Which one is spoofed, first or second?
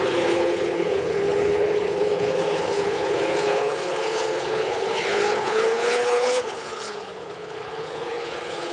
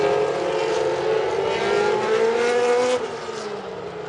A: first